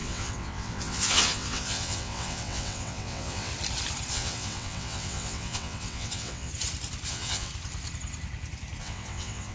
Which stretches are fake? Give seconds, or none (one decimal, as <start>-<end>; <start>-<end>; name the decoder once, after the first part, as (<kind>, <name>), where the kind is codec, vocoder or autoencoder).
0.0-3.5 (vocoder, WaveNeXt); 4.1-6.5; 7.1-7.5; 8.8-9.5